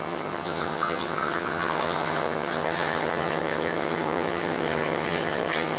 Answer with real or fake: fake